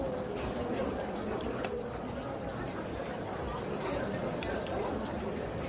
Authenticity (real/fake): real